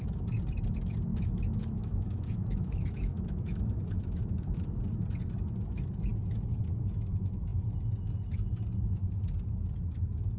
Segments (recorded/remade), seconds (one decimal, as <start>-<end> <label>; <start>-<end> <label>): 0.0-1.1 recorded; 1.1-4.8 remade; 4.8-10.4 recorded